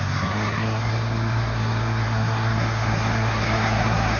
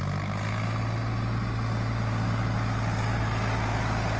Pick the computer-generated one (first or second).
first